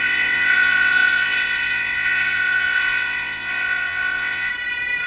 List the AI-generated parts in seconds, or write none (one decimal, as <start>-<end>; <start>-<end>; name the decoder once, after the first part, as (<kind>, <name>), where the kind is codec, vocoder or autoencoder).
0.0-4.5 (vocoder, WaveNeXt)